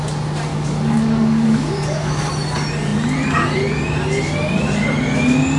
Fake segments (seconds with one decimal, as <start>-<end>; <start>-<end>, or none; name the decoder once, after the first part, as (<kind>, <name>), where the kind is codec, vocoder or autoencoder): 0.5-2.3 (codec, DAC)